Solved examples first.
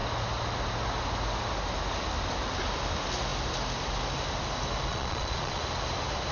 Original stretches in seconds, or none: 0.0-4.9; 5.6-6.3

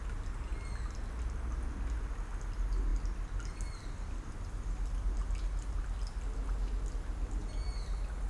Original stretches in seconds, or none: 0.0-8.3

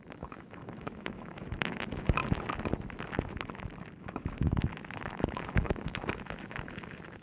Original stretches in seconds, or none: 2.2-4.0

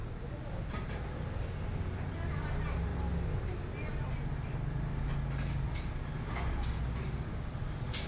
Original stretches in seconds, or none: 0.0-8.1

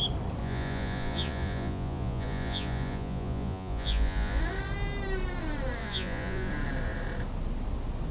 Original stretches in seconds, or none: 0.0-0.4; 4.4-5.8; 6.5-8.1

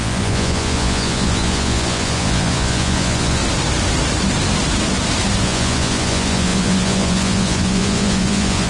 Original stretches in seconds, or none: 3.4-5.4

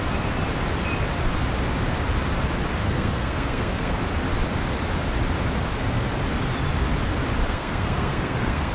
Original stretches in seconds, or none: 0.0-2.8; 4.0-7.4